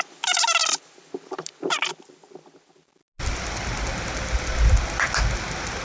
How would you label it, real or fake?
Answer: real